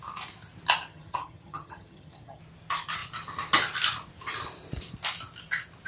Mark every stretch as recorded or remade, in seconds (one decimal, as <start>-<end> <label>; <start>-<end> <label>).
0.0-0.9 recorded; 0.9-2.4 remade; 2.4-5.9 recorded